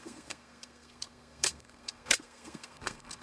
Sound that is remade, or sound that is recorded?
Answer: remade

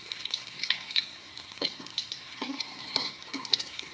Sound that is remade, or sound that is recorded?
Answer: remade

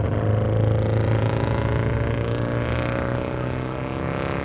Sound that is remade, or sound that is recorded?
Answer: recorded